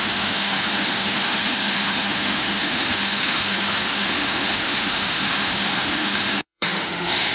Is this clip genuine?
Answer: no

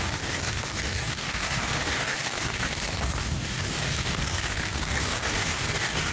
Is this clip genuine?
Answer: no